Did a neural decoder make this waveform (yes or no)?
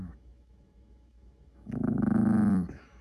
yes